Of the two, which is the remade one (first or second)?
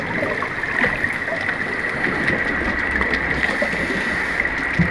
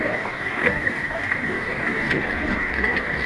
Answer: second